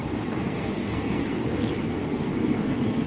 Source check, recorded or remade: remade